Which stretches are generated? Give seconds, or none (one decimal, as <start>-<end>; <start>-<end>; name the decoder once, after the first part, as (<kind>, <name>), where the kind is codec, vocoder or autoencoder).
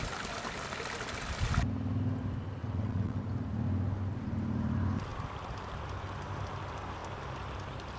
2.6-3.2 (vocoder, WaveNeXt)